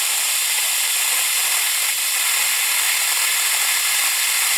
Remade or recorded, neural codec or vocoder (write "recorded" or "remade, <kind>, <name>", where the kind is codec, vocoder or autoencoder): recorded